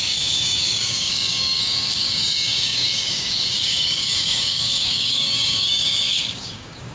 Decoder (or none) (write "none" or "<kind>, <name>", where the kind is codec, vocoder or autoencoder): codec, DAC